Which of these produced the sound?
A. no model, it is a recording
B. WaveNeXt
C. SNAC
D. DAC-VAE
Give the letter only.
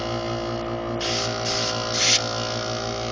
A